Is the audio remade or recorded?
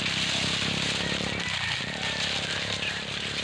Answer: recorded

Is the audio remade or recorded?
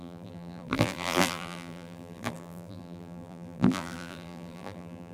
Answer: remade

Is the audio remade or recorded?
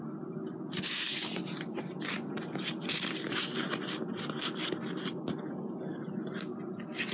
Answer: recorded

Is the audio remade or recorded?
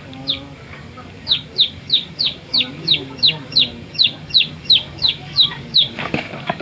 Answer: remade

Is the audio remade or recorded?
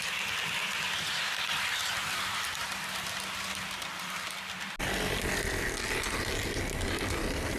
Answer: recorded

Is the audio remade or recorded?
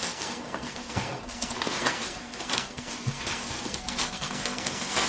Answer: remade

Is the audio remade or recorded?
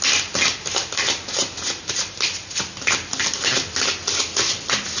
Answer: recorded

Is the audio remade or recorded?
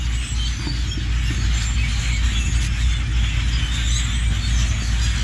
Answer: recorded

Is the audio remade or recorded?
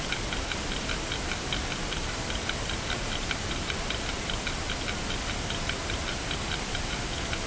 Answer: recorded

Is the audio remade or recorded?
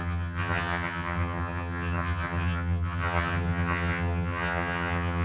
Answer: remade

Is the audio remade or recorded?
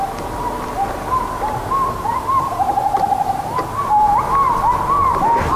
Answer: recorded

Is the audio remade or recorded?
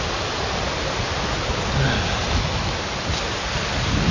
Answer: recorded